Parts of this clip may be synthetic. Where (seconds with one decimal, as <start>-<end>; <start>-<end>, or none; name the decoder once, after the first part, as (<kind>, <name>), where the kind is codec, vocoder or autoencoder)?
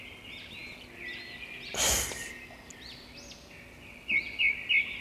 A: none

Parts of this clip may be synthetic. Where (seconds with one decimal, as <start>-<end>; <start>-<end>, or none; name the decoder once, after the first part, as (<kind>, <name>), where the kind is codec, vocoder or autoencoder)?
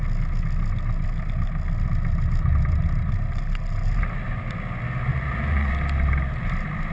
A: 5.1-5.7 (vocoder, Vocos)